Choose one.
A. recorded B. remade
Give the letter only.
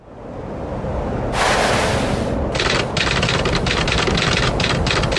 A